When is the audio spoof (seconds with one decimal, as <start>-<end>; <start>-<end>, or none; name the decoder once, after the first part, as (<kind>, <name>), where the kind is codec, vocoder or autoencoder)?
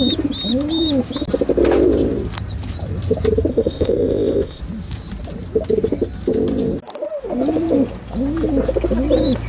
3.5-4.6 (codec, ZipCodec)